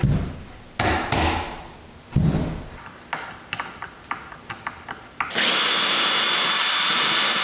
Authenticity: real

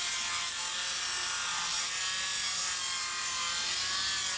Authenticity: real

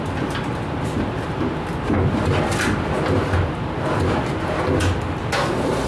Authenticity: real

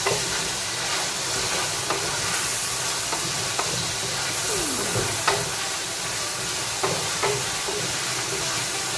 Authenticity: real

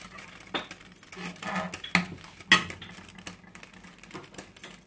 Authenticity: real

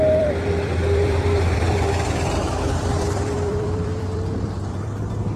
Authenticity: fake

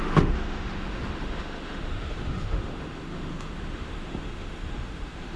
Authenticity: fake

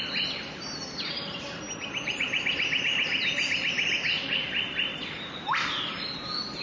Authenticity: real